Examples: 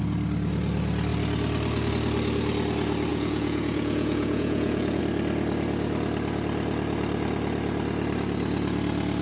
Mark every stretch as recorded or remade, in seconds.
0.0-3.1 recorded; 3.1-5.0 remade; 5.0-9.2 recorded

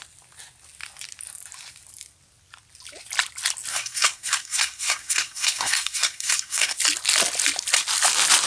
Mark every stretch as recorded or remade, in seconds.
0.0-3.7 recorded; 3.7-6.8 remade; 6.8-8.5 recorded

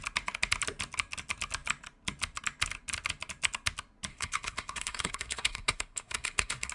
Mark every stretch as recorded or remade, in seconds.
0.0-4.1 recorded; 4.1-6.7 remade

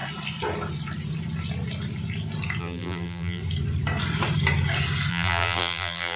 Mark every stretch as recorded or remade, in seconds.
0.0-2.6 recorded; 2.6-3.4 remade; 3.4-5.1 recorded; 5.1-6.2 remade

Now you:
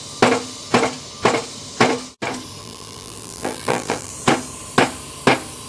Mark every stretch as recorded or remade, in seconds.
0.0-2.6 recorded; 2.6-4.1 remade; 4.1-5.7 recorded

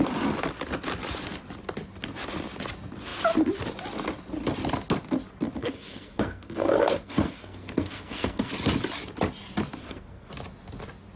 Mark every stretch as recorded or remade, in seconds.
0.0-5.6 recorded; 5.6-8.5 remade; 8.5-9.8 recorded; 9.8-10.3 remade; 10.3-11.2 recorded

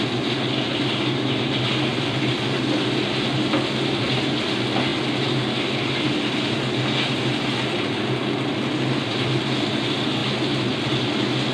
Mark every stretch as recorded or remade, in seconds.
0.0-11.5 recorded

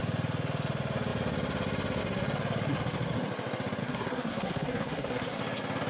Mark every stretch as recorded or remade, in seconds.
0.0-3.8 recorded; 3.8-5.4 remade; 5.4-5.9 recorded